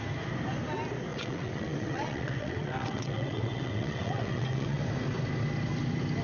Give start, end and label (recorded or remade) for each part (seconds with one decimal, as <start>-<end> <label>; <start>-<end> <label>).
0.0-1.1 recorded; 1.1-4.8 remade; 4.8-6.2 recorded